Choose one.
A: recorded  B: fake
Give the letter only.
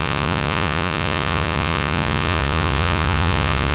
B